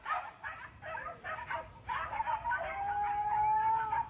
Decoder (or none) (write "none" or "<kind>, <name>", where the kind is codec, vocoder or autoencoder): none